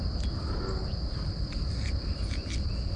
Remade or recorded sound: recorded